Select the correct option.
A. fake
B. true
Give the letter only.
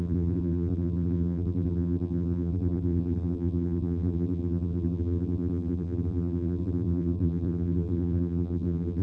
A